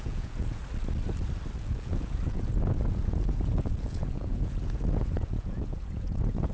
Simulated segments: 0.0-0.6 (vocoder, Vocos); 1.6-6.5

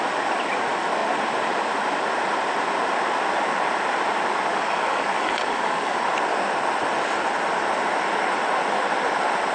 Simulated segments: 4.5-6.1 (codec, DAC)

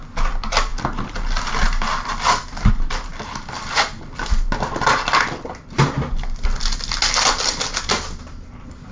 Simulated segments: none

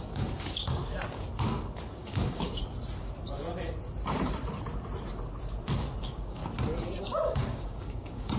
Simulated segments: 0.0-0.8 (codec, DAC); 2.0-2.6; 6.0-6.4; 7.0-8.4

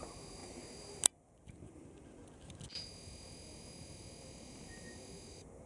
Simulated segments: none

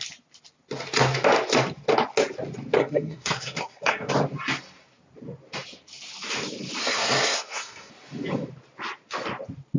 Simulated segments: 2.8-4.1 (codec, SNAC); 6.8-7.9